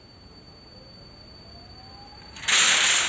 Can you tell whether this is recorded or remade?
recorded